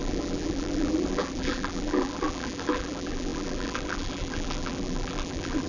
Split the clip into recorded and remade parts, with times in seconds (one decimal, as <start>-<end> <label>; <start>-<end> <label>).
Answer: 0.0-5.7 remade